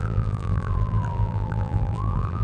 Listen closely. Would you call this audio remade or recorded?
remade